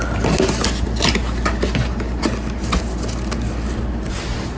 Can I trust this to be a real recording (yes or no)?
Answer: yes